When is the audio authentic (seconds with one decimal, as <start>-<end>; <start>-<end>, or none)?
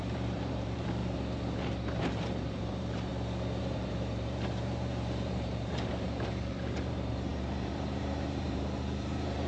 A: 1.0-2.1; 3.1-3.6